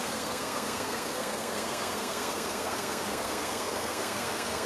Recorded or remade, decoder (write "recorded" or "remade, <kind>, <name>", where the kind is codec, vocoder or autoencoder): remade, codec, SNAC